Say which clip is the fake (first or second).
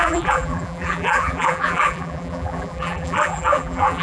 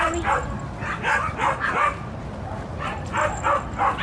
first